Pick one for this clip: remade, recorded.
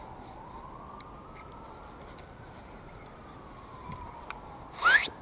recorded